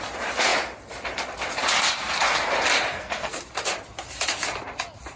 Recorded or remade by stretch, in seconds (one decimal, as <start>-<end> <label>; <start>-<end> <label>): 0.0-2.9 recorded; 2.9-3.4 remade; 3.4-5.2 recorded